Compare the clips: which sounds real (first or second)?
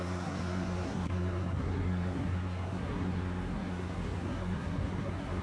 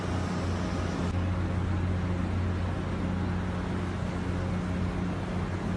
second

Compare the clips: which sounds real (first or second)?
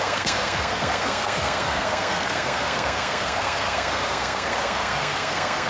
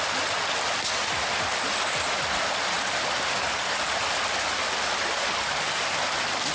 second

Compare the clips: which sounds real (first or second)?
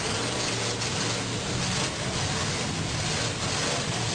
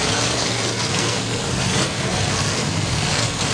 first